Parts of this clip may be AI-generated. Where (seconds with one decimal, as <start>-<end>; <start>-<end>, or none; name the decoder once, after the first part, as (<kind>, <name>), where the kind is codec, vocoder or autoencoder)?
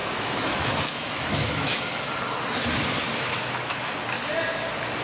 0.0-2.0 (autoencoder, DAC-VAE); 3.0-3.9